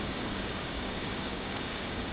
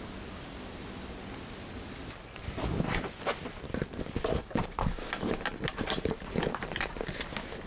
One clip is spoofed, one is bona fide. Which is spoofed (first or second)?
first